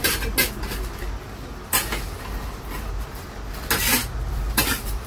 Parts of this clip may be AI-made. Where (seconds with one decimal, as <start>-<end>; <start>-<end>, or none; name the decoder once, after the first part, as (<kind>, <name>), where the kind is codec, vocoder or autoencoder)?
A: 4.0-5.1 (vocoder, BigVGAN v2)